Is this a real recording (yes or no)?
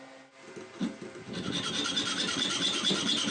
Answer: yes